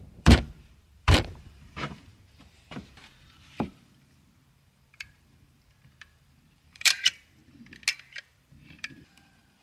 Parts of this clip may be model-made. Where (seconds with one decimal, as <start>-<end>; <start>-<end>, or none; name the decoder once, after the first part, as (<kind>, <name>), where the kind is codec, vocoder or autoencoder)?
0.0-7.4 (vocoder, BigVGAN v2); 8.3-9.6